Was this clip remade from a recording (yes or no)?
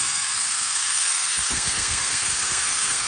yes